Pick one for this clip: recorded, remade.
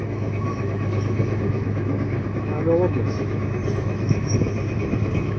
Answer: remade